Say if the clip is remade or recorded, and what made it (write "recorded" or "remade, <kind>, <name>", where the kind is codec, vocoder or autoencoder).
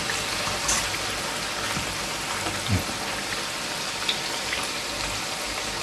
recorded